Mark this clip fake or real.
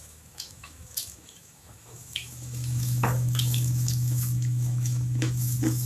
fake